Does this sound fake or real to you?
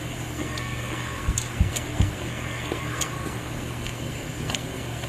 fake